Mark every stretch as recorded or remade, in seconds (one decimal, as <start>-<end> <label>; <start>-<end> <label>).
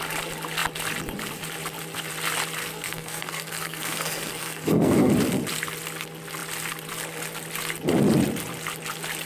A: 0.0-2.6 recorded; 2.6-5.1 remade; 5.1-9.3 recorded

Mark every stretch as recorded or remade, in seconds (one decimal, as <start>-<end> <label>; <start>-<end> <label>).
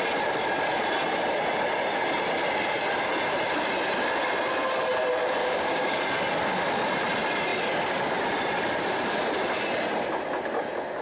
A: 0.0-5.4 recorded; 5.4-6.0 remade; 6.0-11.0 recorded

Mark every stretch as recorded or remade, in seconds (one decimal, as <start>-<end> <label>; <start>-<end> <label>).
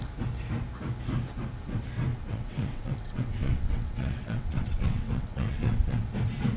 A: 0.0-2.1 recorded; 2.1-6.1 remade; 6.1-6.6 recorded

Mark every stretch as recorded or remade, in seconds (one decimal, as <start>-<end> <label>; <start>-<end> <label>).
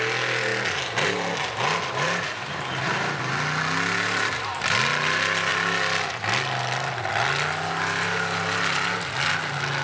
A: 0.0-9.8 recorded